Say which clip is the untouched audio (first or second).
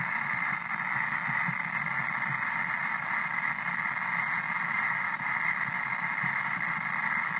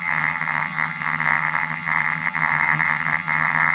first